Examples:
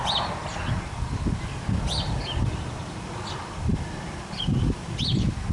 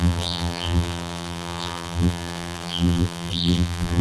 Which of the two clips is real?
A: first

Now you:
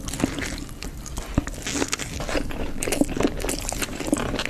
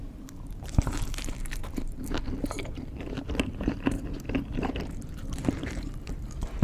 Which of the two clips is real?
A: first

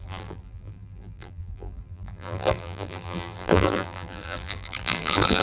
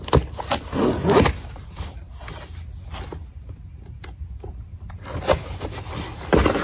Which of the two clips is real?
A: second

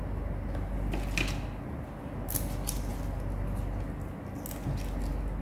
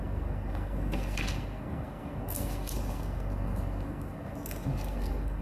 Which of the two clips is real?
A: first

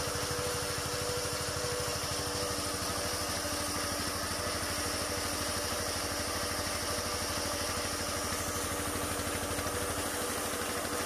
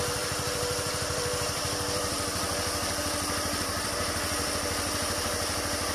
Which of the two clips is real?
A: first